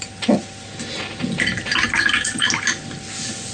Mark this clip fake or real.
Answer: real